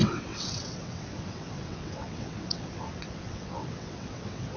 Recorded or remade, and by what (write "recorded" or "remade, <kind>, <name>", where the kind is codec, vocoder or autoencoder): remade, vocoder, WaveNeXt